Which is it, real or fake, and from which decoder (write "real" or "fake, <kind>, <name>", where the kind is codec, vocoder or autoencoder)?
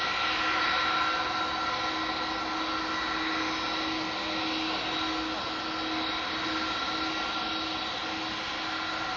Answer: real